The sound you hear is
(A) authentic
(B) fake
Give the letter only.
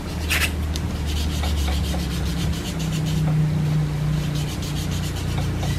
A